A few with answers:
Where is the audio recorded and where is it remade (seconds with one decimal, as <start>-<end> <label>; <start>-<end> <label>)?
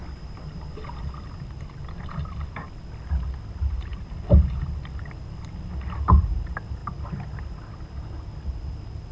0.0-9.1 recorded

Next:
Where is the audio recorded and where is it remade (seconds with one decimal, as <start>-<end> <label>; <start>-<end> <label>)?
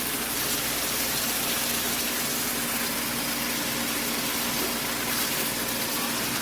0.0-2.5 remade; 2.5-6.4 recorded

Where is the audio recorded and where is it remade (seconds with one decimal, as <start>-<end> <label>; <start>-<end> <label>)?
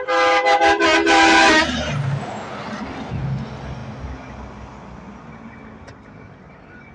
0.0-6.9 recorded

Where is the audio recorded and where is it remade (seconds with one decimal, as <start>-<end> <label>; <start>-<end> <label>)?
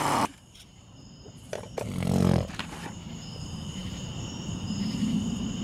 0.0-5.6 remade